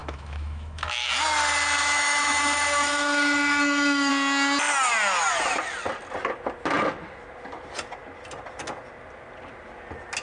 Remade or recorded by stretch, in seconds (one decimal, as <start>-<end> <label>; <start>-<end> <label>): 0.0-1.1 remade; 1.1-1.8 recorded; 1.8-4.1 remade; 4.1-10.2 recorded